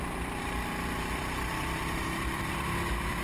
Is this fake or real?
fake